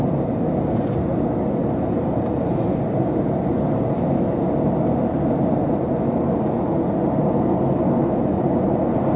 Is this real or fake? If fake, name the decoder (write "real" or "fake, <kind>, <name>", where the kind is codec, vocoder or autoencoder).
real